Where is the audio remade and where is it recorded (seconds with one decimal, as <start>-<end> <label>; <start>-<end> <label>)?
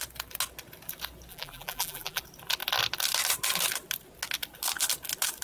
0.0-1.3 recorded; 1.3-2.2 remade; 2.2-5.4 recorded